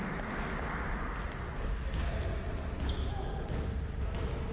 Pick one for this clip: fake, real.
real